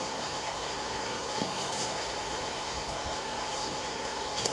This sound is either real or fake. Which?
fake